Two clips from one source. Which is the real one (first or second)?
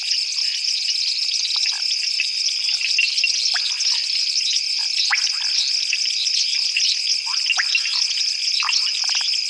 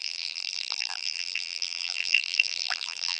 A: first